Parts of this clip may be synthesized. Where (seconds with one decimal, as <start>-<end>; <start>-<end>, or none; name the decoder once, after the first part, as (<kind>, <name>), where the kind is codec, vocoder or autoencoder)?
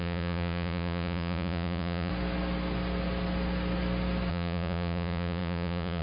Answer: 0.0-2.1 (vocoder, Vocos); 4.3-6.0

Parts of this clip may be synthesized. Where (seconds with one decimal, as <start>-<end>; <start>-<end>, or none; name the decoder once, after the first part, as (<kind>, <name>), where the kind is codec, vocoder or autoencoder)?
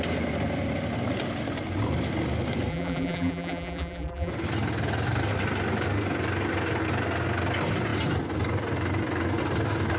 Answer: 2.7-4.3 (vocoder, BigVGAN v2)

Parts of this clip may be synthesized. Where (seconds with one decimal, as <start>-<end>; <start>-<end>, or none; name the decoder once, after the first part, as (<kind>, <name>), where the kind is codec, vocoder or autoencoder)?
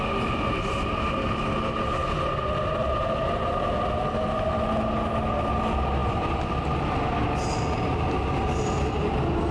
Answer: none